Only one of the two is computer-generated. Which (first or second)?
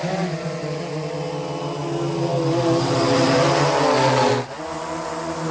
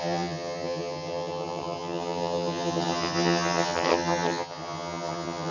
second